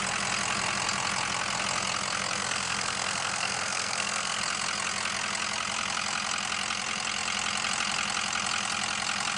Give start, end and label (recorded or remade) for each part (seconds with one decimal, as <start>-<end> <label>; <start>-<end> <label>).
0.0-2.4 recorded; 2.4-4.4 remade; 4.4-9.4 recorded